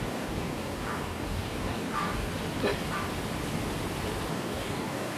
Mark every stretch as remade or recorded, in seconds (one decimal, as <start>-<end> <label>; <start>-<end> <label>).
0.0-2.3 remade; 2.3-4.3 recorded; 4.3-5.2 remade